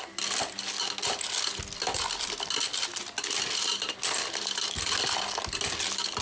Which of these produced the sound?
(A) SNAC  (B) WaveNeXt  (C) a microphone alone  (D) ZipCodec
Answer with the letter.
C